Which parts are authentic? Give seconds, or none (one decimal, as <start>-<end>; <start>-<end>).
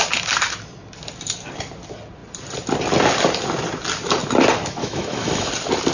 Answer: 0.0-4.8; 5.5-5.9